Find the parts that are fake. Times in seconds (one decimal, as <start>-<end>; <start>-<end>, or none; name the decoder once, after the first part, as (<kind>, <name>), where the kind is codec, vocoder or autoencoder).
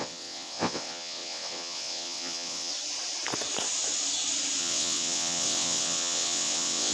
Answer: 0.0-2.7 (vocoder, WaveNeXt); 4.6-6.9